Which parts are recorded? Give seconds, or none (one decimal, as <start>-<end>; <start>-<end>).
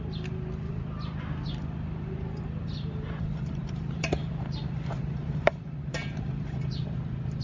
0.0-2.6; 6.8-7.4